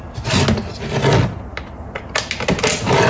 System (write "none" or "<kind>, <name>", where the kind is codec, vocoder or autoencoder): none